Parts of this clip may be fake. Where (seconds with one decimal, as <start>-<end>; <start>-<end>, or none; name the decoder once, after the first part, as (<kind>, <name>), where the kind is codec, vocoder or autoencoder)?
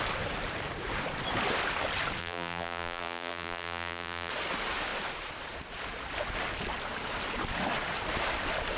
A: 2.2-4.3 (vocoder, BigVGAN v2)